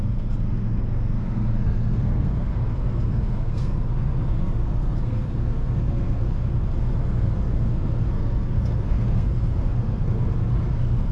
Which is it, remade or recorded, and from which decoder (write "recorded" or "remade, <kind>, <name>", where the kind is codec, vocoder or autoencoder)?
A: remade, codec, SNAC